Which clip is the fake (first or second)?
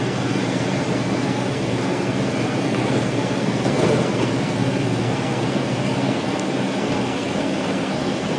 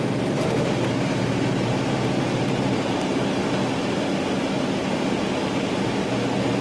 first